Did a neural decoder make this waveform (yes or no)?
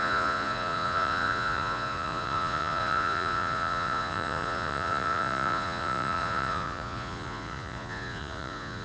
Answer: yes